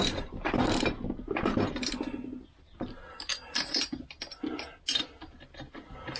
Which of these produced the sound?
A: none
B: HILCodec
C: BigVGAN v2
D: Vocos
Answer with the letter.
A